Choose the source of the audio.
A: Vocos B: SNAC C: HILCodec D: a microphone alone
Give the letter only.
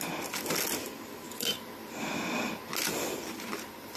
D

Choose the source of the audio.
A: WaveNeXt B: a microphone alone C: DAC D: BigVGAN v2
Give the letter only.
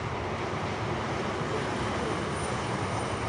B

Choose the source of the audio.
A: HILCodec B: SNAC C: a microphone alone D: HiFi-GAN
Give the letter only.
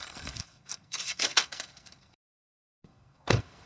B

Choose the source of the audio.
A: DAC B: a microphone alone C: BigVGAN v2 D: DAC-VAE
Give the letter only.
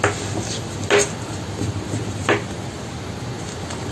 B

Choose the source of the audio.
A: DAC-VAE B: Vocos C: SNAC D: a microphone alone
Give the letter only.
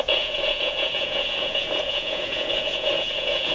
B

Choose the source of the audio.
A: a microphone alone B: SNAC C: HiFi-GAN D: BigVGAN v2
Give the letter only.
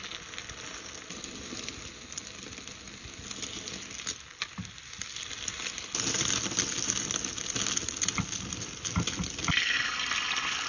A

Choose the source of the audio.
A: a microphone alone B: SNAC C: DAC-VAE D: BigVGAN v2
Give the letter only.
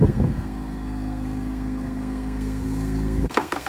B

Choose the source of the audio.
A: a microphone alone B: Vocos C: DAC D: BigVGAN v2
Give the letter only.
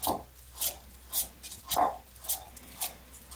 A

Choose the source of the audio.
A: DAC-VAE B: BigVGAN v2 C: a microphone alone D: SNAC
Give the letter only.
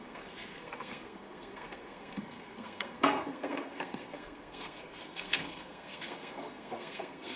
D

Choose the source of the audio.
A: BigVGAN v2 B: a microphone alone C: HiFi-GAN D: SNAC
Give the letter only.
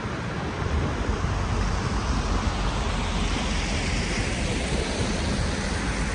B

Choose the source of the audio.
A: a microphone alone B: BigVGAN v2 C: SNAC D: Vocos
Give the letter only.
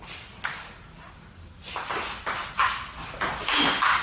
A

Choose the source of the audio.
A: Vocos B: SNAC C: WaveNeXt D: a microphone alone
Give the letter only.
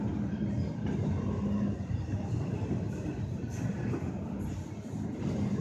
D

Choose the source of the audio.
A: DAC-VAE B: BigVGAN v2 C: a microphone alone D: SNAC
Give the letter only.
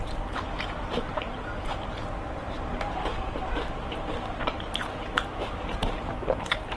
B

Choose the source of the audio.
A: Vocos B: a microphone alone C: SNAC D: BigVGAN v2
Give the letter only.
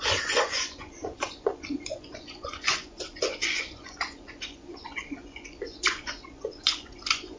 A